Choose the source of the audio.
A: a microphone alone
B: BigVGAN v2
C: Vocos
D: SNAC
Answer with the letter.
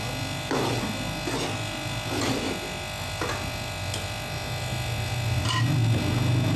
A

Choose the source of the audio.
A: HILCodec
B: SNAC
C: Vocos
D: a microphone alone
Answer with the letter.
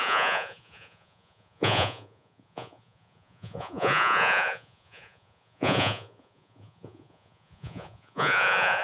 C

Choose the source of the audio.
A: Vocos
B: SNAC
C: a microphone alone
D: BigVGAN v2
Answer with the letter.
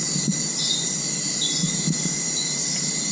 C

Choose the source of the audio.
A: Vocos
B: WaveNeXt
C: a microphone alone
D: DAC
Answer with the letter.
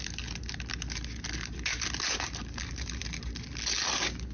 C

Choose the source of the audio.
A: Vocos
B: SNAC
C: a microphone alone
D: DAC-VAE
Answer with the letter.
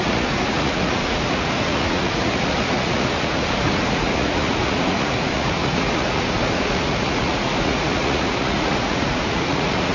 A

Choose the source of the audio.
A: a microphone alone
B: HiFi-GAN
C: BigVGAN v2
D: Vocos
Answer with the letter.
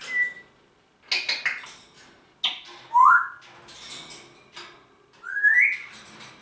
A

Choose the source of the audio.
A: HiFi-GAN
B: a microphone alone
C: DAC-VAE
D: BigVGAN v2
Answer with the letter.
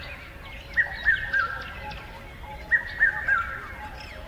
B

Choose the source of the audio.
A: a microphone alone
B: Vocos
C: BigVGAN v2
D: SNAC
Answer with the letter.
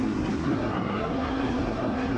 D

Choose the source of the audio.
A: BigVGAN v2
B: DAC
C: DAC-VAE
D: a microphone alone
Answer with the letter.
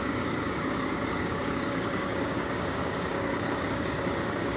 B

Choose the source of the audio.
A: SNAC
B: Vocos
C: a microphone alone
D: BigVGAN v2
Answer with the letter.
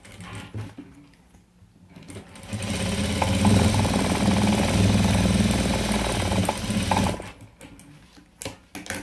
C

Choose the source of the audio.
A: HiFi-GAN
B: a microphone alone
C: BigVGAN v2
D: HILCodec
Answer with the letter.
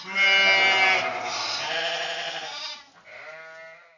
B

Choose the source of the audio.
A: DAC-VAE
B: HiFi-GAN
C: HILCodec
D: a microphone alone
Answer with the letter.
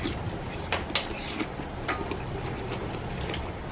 D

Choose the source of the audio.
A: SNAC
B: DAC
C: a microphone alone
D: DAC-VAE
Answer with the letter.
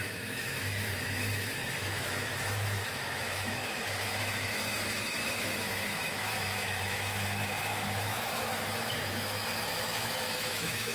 D